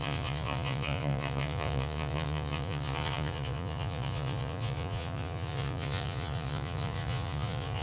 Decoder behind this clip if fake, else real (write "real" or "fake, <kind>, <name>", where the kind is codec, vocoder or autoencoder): fake, vocoder, Vocos